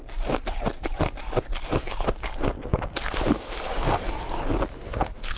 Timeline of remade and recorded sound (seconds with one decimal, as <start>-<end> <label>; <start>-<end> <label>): 0.0-4.7 recorded; 4.7-5.4 remade